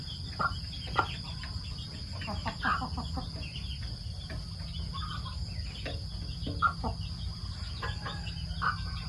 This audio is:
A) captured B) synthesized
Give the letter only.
A